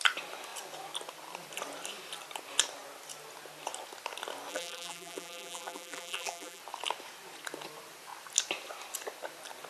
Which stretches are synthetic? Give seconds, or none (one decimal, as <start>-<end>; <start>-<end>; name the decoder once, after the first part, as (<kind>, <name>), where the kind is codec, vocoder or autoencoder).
4.5-6.6 (vocoder, BigVGAN v2)